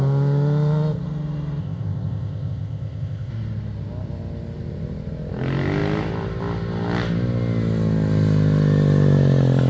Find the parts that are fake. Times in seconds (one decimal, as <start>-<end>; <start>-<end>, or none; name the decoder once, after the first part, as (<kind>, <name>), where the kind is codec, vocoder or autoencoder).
1.6-3.3 (codec, ZipCodec)